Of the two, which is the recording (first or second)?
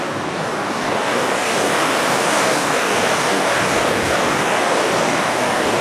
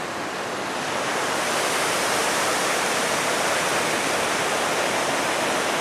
second